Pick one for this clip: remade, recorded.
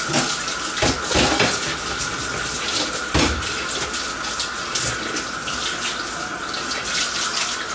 recorded